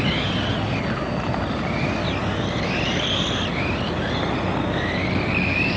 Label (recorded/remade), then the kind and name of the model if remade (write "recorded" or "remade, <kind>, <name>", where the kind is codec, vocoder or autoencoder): recorded